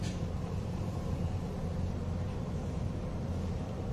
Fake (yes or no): yes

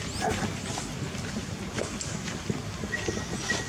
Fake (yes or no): no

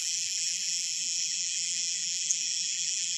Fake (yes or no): yes